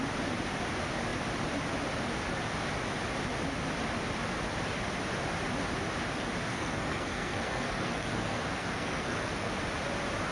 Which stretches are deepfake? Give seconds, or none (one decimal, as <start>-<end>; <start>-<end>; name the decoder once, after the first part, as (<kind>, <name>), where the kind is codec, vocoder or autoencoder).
6.5-9.5 (codec, SNAC)